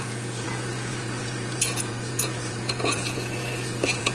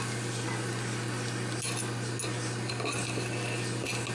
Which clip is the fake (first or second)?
first